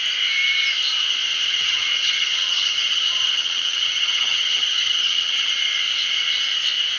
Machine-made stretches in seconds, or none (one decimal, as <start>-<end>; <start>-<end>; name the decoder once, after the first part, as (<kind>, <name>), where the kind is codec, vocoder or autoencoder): 1.3-5.5 (vocoder, HiFi-GAN)